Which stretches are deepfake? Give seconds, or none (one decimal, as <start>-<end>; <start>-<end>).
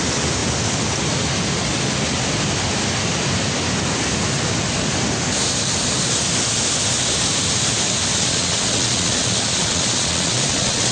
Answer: 8.2-10.9